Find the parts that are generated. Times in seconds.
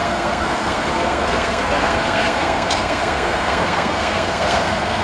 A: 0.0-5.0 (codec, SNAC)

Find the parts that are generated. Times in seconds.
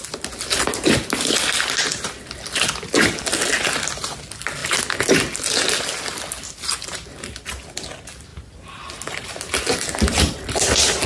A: none